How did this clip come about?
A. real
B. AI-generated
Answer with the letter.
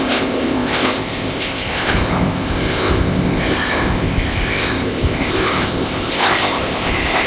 B